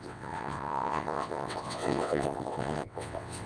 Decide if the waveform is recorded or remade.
remade